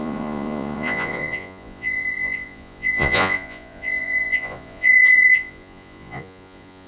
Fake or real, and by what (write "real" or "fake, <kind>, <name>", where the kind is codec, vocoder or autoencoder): fake, vocoder, Vocos